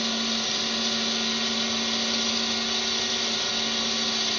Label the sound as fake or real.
real